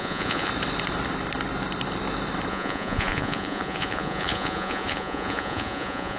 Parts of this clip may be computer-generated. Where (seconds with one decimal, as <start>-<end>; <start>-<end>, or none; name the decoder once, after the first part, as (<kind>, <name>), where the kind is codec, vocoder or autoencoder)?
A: 0.0-0.5 (vocoder, Vocos); 2.5-6.2